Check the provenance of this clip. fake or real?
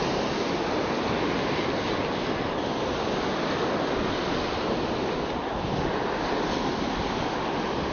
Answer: real